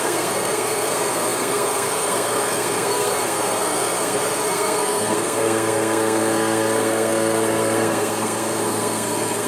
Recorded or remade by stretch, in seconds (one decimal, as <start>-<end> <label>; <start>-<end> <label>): 0.0-9.5 remade